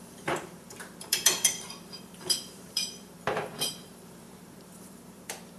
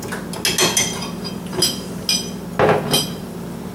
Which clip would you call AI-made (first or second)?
first